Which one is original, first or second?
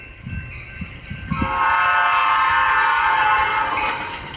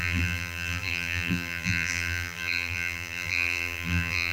first